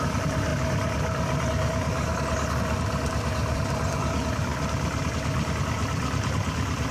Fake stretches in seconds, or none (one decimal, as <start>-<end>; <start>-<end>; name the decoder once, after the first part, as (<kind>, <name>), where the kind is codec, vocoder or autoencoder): none

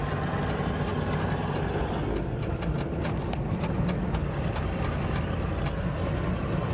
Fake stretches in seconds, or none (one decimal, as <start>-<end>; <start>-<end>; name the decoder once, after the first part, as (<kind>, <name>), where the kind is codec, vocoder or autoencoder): none